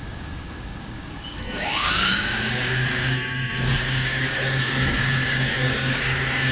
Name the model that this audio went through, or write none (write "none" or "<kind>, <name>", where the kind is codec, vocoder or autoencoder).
codec, DAC